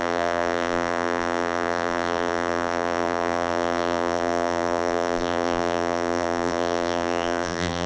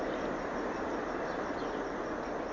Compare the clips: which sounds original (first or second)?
second